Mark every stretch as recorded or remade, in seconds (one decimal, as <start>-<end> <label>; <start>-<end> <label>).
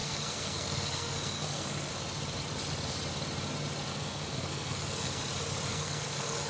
0.0-1.9 remade; 1.9-3.9 recorded; 3.9-5.2 remade; 5.2-5.7 recorded; 5.7-6.5 remade